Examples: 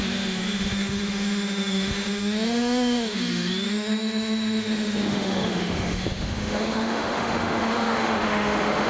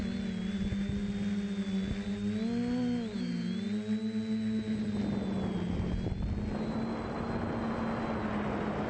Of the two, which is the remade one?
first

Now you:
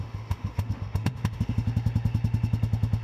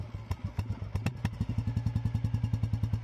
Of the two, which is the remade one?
first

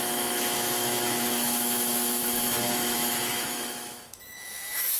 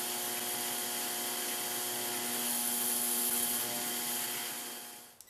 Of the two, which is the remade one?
first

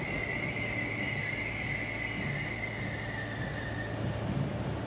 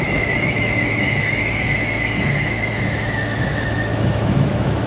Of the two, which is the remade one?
second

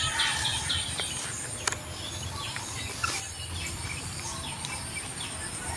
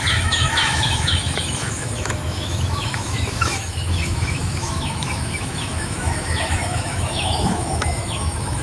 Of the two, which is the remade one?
second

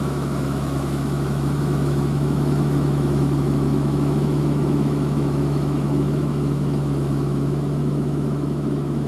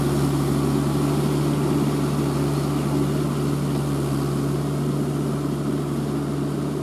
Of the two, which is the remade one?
first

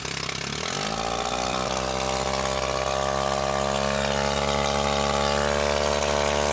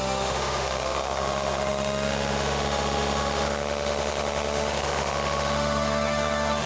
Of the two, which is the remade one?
second